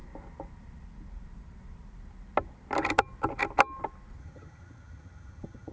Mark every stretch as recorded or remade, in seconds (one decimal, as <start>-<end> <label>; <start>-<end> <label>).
0.0-4.2 recorded; 4.2-5.7 remade